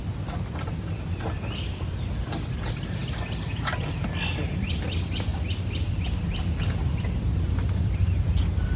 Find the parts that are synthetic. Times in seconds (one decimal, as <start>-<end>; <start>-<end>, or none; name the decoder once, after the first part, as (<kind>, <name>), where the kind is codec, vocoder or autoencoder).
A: none